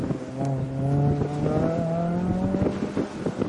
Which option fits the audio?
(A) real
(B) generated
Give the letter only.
A